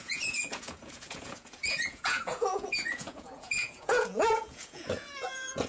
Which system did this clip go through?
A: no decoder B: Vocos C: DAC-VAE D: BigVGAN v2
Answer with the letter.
B